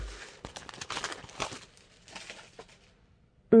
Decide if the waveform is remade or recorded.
recorded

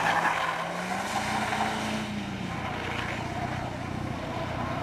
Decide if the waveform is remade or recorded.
recorded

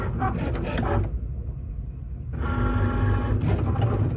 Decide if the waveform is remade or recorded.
recorded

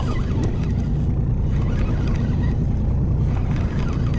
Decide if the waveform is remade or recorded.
recorded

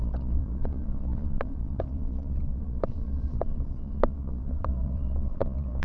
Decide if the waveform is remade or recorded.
remade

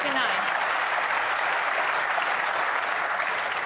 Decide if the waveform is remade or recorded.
recorded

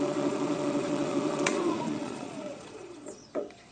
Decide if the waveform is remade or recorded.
remade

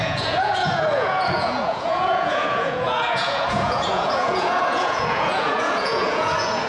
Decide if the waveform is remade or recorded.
remade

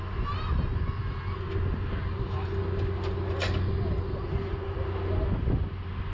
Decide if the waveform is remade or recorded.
recorded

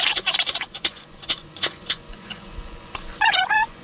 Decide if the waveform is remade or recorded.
remade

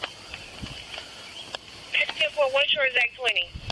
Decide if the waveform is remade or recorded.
recorded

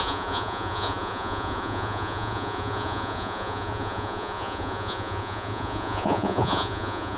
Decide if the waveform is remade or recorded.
remade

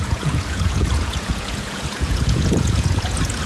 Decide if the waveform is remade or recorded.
remade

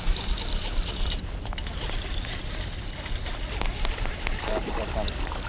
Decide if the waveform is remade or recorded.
recorded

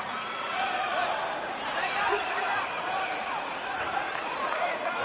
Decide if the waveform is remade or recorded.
remade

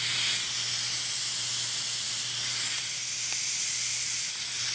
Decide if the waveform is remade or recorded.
recorded